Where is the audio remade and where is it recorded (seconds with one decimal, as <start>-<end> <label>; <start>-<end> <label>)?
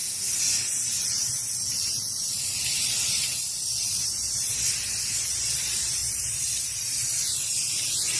0.0-2.2 recorded; 2.2-4.1 remade; 4.1-6.0 recorded; 6.0-6.9 remade; 6.9-8.2 recorded